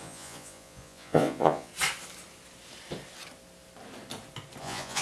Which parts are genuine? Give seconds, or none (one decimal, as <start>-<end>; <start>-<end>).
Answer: 1.7-4.6